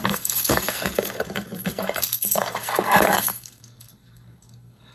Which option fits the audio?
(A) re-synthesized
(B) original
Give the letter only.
A